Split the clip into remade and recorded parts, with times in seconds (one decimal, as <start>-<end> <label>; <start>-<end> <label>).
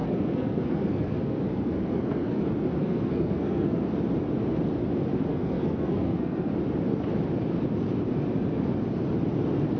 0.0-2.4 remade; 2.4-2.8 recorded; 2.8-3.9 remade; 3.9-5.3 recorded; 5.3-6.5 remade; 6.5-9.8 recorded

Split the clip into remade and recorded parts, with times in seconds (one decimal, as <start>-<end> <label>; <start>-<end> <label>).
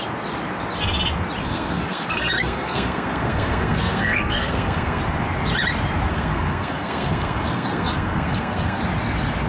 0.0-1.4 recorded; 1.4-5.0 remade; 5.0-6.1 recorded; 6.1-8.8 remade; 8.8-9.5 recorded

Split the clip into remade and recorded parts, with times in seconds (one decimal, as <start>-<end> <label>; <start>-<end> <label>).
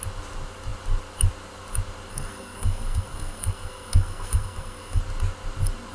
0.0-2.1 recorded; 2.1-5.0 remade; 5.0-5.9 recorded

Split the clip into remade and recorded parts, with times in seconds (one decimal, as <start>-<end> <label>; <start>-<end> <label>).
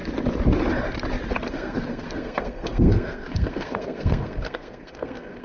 0.0-1.5 recorded; 1.5-5.4 remade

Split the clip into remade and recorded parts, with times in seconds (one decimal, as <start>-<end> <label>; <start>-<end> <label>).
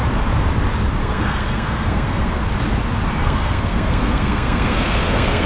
0.0-1.0 recorded; 1.0-2.4 remade; 2.4-3.2 recorded; 3.2-5.5 remade